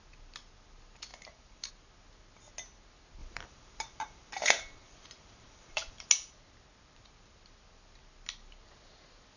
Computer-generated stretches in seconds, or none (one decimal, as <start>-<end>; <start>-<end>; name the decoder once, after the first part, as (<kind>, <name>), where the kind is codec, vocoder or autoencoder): 1.1-1.7 (vocoder, BigVGAN v2); 3.2-6.1